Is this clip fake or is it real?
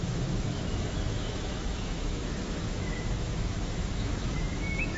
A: fake